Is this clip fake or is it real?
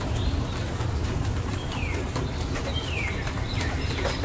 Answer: fake